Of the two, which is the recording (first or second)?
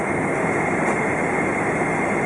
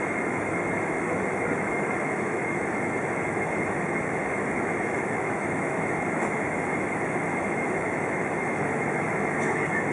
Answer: first